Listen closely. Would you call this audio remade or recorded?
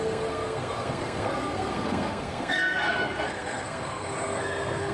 remade